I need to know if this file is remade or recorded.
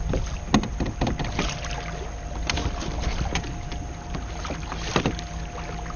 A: recorded